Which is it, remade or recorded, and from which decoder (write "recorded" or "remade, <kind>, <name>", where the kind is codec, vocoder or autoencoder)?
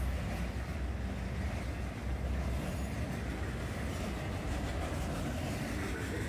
recorded